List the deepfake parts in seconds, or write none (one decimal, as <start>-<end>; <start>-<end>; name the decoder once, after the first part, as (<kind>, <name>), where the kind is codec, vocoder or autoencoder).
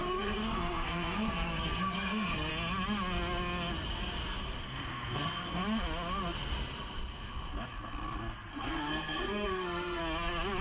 0.0-2.5 (codec, SNAC); 4.6-5.6; 8.3-10.0